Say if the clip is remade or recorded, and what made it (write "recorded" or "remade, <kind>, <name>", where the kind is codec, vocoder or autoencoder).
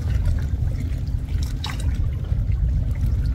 recorded